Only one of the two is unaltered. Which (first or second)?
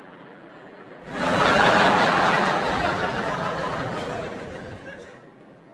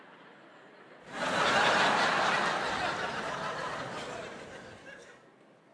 second